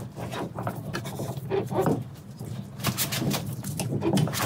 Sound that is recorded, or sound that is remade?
recorded